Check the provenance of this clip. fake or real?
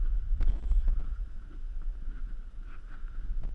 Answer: real